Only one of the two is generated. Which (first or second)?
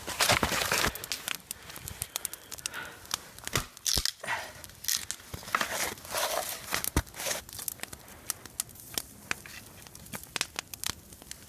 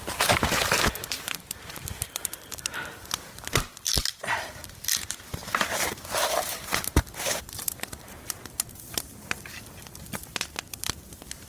second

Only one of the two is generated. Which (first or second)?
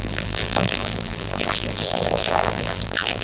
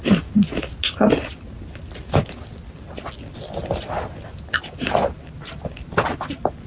first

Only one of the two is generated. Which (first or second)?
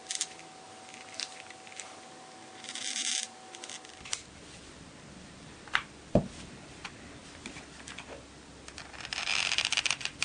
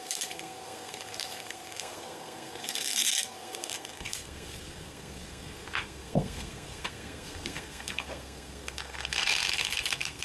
second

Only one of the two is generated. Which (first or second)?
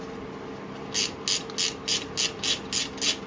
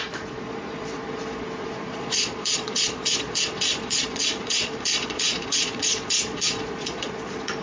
second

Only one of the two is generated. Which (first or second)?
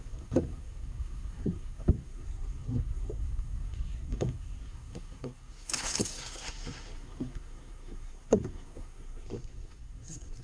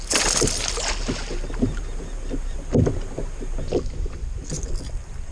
first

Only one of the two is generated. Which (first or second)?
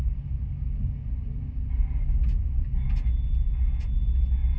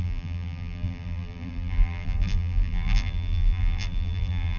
second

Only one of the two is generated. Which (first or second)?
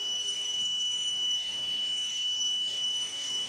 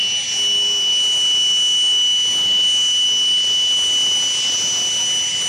first